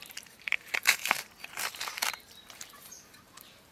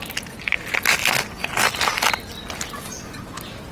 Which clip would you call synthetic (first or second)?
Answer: first